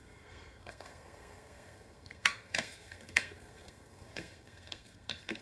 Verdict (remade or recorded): remade